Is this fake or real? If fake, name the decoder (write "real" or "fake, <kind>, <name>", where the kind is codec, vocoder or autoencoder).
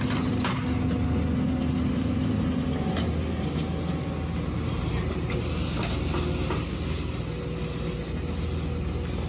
real